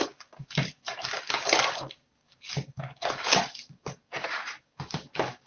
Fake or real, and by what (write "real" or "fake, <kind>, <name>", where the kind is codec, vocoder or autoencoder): fake, codec, DAC